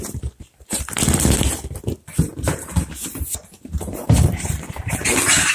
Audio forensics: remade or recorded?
remade